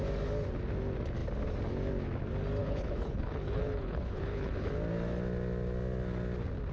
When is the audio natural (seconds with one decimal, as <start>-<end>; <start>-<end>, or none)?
0.0-2.6; 4.7-6.7